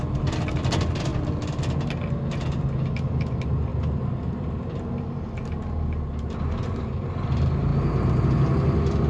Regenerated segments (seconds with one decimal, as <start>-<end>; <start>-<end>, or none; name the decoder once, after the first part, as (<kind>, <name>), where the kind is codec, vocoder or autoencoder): none